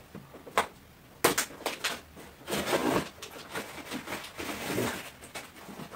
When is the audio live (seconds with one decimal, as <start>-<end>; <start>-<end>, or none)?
0.0-6.0